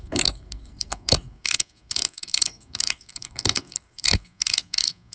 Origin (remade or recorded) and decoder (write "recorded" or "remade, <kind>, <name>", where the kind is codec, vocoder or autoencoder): remade, codec, SNAC